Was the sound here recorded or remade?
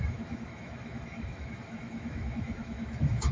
remade